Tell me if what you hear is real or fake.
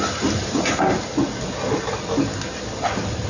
real